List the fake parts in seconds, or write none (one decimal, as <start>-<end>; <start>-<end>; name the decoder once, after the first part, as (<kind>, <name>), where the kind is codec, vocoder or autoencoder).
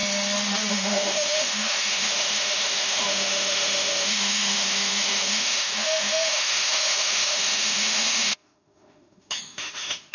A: 0.7-10.1 (autoencoder, DAC-VAE)